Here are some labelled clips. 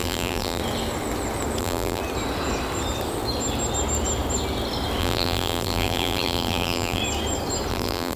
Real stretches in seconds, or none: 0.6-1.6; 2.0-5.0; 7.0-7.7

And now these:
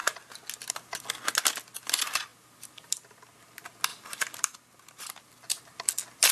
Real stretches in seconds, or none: 0.0-2.3; 3.2-3.9; 5.6-6.3

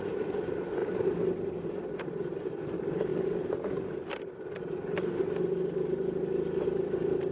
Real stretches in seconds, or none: 0.0-0.8; 2.5-3.1; 3.8-7.3

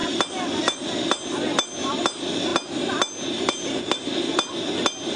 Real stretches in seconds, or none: 0.0-5.2